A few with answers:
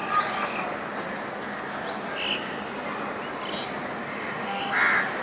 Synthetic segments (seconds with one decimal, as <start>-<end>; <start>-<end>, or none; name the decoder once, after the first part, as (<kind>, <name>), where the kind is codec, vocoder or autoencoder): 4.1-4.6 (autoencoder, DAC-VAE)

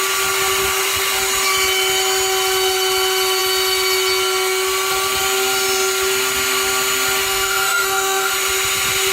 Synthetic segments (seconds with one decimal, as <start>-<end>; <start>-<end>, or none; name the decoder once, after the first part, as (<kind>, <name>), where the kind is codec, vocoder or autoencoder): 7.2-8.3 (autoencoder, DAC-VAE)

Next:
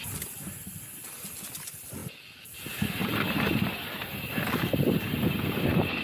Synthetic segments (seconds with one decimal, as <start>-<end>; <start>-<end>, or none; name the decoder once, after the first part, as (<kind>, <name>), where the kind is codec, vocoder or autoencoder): none

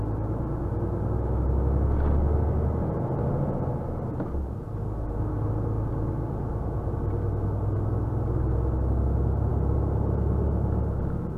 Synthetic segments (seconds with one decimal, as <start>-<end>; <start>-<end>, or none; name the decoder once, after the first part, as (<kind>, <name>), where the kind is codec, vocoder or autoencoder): none

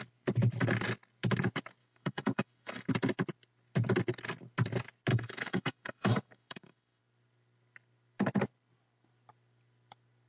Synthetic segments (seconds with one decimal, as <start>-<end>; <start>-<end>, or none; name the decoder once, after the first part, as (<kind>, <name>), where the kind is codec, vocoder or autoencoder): 1.8-2.9 (autoencoder, DAC-VAE); 5.1-7.0

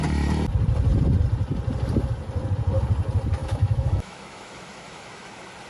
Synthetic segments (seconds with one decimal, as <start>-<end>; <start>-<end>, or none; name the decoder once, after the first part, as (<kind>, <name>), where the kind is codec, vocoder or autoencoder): 3.4-5.3 (autoencoder, DAC-VAE)

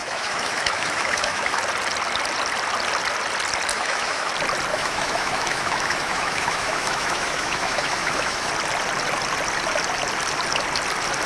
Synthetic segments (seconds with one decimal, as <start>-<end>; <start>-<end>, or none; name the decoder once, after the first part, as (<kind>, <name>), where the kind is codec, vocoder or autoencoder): 0.0-1.6 (autoencoder, DAC-VAE); 3.7-4.3; 4.7-8.5

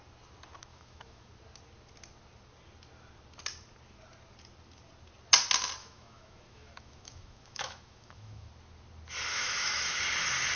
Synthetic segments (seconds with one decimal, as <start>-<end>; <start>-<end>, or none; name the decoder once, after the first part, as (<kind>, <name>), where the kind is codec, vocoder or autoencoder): 0.7-1.3 (autoencoder, DAC-VAE); 5.8-8.5; 9.3-10.0